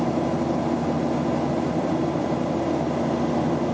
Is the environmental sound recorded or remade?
recorded